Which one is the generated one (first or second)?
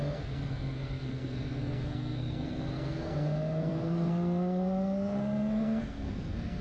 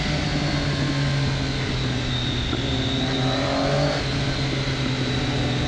first